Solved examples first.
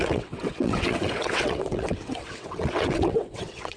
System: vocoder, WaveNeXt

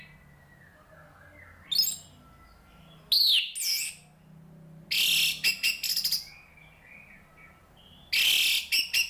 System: none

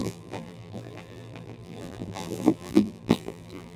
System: vocoder, BigVGAN v2